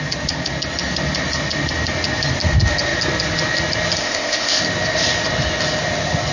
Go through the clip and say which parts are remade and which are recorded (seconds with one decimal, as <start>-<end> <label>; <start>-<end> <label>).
0.0-4.0 recorded; 4.0-4.6 remade; 4.6-6.3 recorded